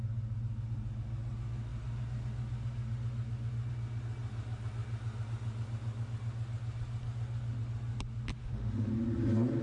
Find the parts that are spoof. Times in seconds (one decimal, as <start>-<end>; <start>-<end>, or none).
8.4-8.9